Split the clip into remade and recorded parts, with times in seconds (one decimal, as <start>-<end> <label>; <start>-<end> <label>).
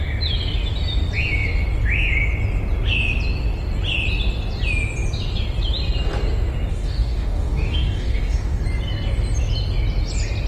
0.0-6.7 recorded; 6.7-8.6 remade; 8.6-10.5 recorded